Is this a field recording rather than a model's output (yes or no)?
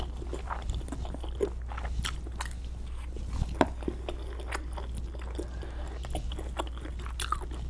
yes